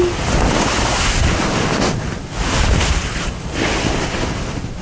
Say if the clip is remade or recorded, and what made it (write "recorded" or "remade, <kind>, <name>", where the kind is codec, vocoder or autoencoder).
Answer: recorded